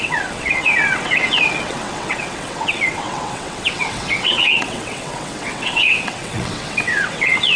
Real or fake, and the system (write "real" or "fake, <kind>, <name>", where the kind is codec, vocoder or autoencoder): fake, vocoder, WaveNeXt